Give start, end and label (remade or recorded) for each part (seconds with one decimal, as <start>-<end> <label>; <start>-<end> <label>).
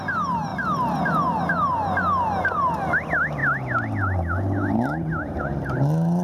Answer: 0.0-6.2 recorded